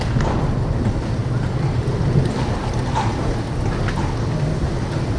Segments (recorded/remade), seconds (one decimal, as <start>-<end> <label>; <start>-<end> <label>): 0.0-5.2 recorded